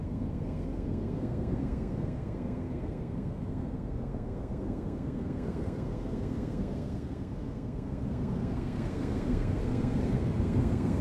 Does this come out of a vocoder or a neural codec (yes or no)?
yes